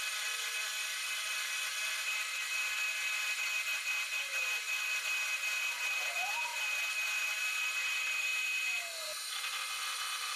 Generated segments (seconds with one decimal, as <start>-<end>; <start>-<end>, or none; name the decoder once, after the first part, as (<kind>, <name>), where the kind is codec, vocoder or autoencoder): 0.0-8.3 (vocoder, BigVGAN v2); 9.8-10.4